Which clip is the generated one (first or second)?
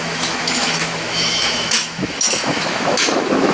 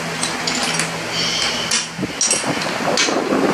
first